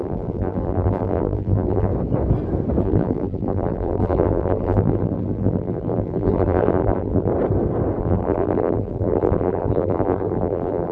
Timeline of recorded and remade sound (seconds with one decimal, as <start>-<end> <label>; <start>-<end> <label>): 0.0-1.9 remade; 1.9-2.8 recorded; 2.8-7.3 remade; 7.3-8.0 recorded; 8.0-10.9 remade